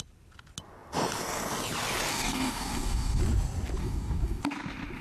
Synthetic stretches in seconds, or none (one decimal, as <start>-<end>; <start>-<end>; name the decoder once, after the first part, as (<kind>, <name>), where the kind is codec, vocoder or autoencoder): 2.1-3.2 (codec, DAC); 3.8-4.4